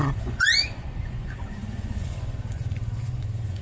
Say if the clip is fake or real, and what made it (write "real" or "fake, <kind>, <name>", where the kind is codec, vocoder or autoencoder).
fake, vocoder, Vocos